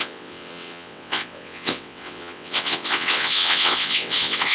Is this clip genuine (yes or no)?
no